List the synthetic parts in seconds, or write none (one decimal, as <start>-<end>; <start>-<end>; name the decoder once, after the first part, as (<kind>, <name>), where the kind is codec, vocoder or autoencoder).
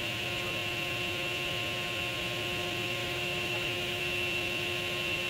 3.0-4.0 (autoencoder, DAC-VAE)